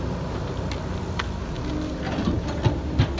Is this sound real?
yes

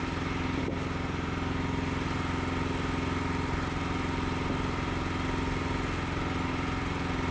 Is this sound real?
yes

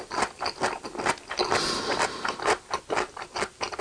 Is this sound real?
yes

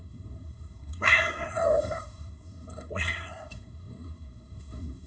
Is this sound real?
no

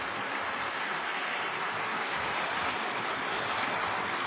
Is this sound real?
yes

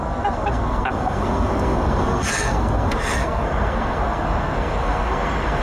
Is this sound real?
no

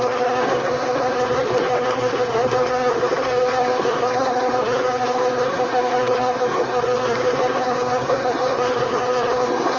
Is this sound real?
no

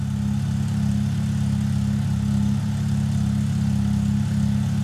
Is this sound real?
yes